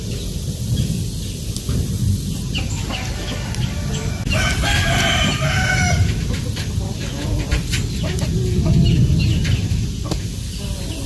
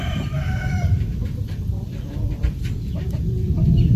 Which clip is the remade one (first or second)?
second